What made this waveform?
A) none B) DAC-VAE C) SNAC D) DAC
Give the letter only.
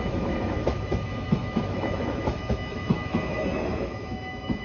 B